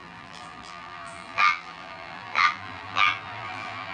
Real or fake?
fake